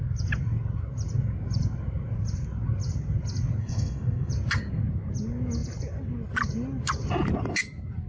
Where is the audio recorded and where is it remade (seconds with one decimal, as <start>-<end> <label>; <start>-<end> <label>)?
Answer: 0.0-3.6 recorded; 3.6-4.3 remade; 4.3-8.1 recorded